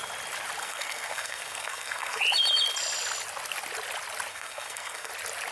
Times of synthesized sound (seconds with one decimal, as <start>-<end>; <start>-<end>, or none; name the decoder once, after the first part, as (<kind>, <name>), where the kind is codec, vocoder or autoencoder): 0.6-2.2 (codec, SNAC); 4.3-5.1